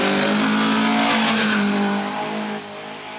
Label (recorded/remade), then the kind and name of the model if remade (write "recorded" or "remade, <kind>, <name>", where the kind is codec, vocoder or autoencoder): recorded